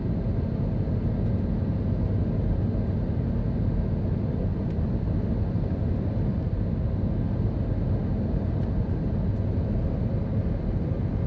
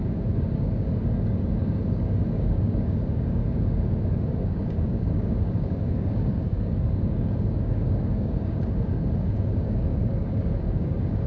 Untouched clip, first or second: first